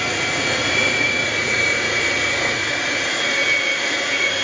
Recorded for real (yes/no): no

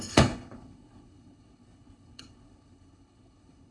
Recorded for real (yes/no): no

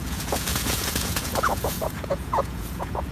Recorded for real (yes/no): no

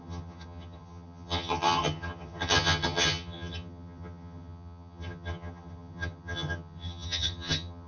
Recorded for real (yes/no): no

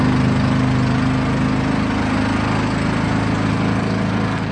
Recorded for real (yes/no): yes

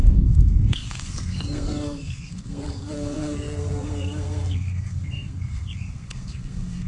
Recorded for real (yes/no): no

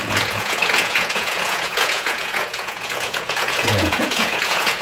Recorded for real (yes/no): no